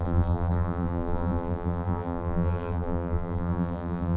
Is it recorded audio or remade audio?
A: remade